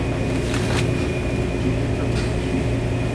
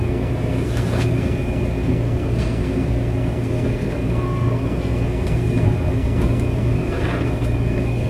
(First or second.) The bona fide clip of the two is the first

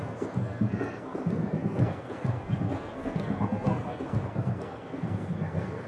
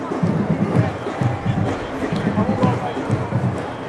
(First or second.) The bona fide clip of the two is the second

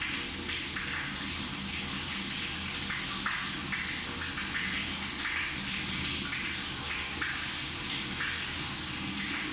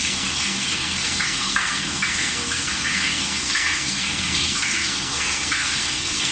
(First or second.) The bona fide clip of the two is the first